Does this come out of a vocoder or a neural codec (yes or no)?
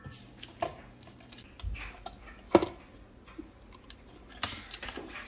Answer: no